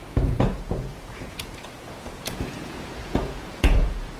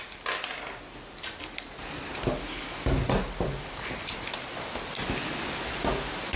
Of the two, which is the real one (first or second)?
second